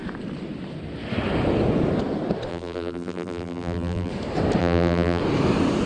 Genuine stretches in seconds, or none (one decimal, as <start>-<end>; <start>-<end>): 0.0-2.5; 4.1-4.6; 5.2-5.9